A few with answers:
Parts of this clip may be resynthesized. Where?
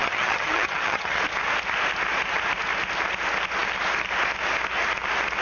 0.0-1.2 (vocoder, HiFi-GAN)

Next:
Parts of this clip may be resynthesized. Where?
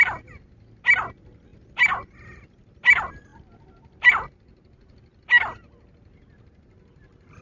none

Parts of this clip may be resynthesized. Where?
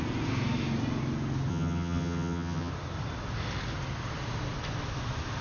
1.5-2.7 (vocoder, HiFi-GAN)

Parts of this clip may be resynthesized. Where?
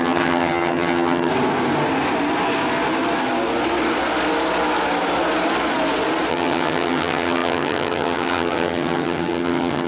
0.0-1.3 (vocoder, HiFi-GAN); 6.3-9.9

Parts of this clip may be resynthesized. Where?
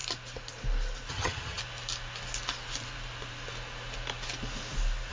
1.1-1.6 (vocoder, HiFi-GAN)